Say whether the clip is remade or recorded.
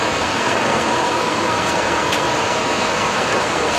remade